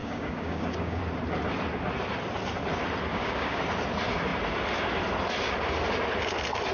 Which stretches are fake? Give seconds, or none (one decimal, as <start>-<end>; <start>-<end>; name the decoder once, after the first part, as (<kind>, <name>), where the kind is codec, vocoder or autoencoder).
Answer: 0.0-1.0 (codec, DAC); 3.1-3.6